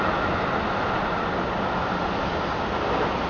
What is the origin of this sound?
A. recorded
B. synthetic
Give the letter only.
A